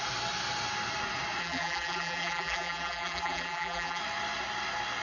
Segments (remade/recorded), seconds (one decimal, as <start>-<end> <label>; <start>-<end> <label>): 0.0-1.4 recorded; 1.4-4.0 remade; 4.0-5.0 recorded